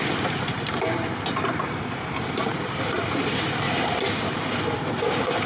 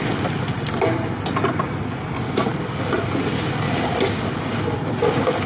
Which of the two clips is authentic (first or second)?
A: second